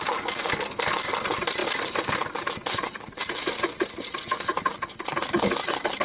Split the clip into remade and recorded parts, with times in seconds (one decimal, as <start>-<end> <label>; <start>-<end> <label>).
0.0-6.0 recorded